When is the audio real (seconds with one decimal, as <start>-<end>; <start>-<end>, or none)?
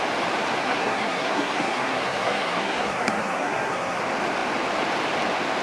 0.0-0.6; 4.0-5.6